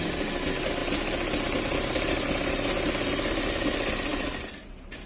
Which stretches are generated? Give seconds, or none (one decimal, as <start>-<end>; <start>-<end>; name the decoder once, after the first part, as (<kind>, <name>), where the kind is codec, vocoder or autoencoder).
none